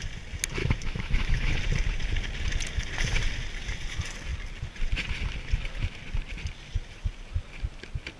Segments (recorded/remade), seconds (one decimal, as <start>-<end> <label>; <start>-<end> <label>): 0.0-0.6 recorded; 0.6-1.6 remade; 1.6-8.2 recorded